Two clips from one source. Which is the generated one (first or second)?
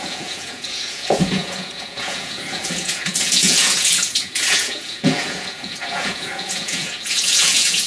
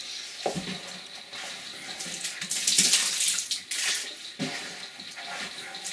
first